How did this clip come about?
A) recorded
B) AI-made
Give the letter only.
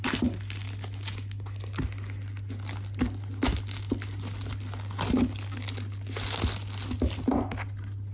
A